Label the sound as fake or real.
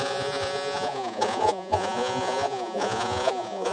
fake